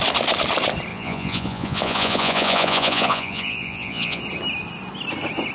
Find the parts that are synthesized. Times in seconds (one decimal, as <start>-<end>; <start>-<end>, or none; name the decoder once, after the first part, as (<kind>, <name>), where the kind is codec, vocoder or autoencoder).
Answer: 0.9-4.2 (vocoder, Vocos)